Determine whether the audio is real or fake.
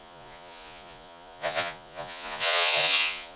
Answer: fake